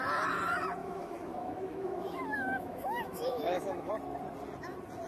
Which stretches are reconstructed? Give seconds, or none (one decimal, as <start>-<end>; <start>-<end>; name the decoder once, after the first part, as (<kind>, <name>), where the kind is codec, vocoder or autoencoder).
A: 0.8-3.9 (autoencoder, DAC-VAE)